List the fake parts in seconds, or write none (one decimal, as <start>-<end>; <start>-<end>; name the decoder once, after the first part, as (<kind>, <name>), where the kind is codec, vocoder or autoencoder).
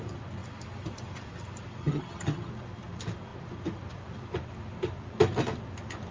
1.8-2.5 (vocoder, HiFi-GAN)